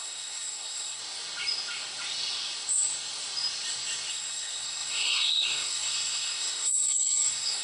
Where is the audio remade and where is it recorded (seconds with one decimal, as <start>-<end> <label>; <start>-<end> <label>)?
0.0-1.0 remade; 1.0-4.1 recorded; 4.1-7.6 remade